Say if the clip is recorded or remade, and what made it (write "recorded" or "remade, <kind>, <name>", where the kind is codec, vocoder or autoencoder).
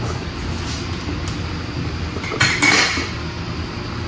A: recorded